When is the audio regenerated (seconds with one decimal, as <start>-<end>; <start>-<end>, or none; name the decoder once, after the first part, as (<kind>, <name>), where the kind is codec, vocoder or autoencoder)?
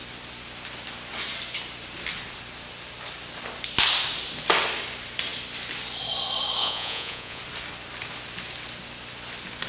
6.6-7.4 (vocoder, Vocos)